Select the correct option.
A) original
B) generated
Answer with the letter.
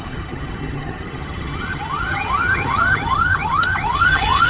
B